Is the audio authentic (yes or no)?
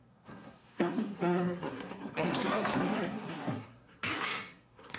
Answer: no